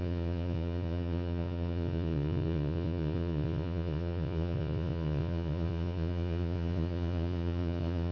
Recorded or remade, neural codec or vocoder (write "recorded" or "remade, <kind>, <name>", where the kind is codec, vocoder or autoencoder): remade, vocoder, Vocos